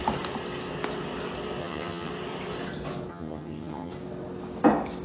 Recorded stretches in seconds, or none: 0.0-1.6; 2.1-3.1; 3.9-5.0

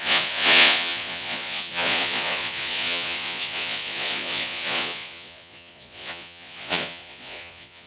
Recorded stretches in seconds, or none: none

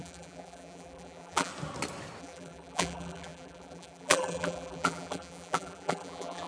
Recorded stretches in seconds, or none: 1.5-2.2

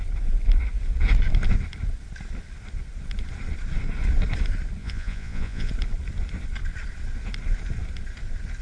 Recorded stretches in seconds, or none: 0.0-4.8; 5.7-8.6

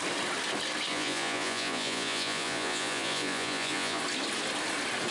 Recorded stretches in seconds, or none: 0.0-0.9; 4.0-5.1